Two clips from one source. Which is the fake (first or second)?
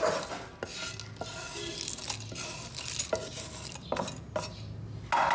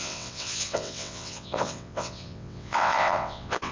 second